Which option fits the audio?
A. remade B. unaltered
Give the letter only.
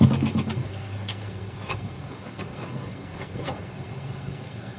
A